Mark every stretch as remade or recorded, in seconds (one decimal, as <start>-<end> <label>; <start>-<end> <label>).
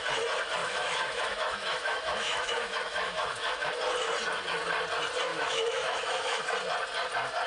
0.0-0.6 recorded; 0.6-3.7 remade; 3.7-5.3 recorded; 5.3-6.4 remade; 6.4-7.5 recorded